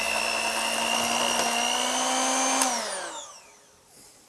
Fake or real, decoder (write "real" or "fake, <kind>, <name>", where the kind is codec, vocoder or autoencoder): real